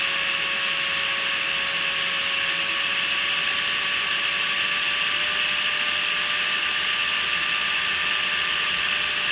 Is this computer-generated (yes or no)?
no